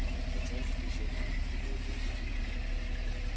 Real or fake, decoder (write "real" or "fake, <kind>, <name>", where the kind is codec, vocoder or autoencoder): real